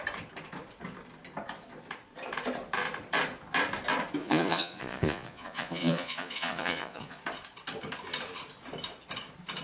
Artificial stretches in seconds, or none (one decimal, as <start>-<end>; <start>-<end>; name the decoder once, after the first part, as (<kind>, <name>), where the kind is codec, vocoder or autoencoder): 4.2-7.2 (vocoder, Vocos)